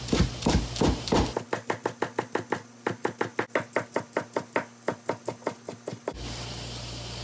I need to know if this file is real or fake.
real